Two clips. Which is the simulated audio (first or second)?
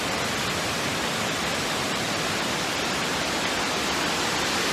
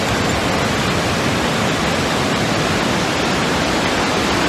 first